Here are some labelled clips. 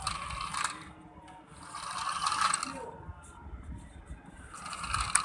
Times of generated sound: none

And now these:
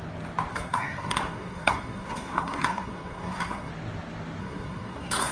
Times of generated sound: 0.5-3.7 (codec, SNAC); 4.4-5.3